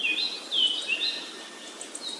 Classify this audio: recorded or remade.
recorded